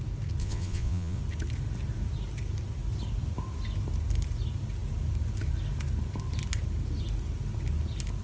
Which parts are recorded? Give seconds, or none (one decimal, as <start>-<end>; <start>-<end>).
0.0-0.4; 1.2-8.2